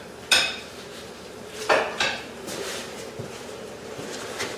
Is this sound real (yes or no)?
no